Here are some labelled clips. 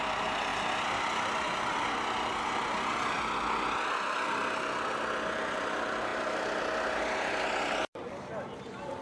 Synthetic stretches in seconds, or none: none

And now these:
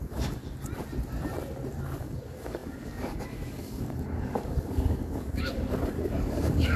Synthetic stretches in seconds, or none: 0.0-0.4 (codec, DAC); 2.0-6.8